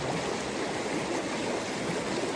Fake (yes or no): no